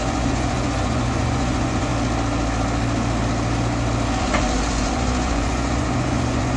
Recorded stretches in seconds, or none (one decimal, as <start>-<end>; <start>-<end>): 1.9-4.2